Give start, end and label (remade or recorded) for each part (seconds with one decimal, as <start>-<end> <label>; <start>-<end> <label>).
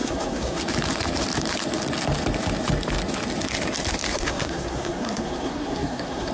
0.0-0.6 remade; 0.6-4.1 recorded; 4.1-6.3 remade